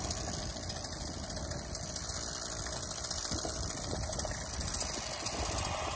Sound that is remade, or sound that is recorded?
recorded